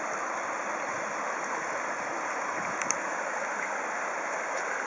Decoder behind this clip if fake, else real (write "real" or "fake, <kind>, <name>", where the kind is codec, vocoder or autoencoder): real